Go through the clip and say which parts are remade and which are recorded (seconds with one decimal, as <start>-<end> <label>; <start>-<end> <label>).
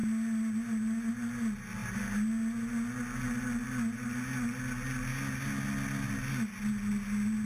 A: 0.0-7.5 recorded